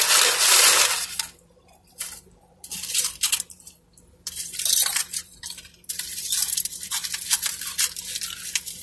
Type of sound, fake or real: fake